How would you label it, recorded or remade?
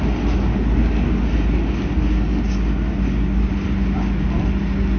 recorded